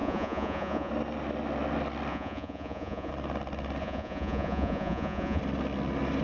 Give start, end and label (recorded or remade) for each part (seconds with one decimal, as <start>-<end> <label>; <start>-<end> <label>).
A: 0.0-0.9 remade; 0.9-2.1 recorded; 2.1-3.1 remade; 3.1-3.8 recorded; 3.8-5.4 remade; 5.4-6.2 recorded